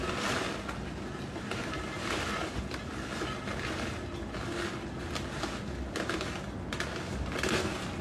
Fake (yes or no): no